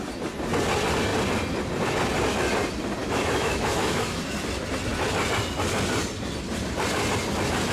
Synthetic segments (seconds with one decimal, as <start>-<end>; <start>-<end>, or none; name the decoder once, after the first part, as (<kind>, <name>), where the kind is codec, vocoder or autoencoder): 3.0-4.2 (autoencoder, DAC-VAE)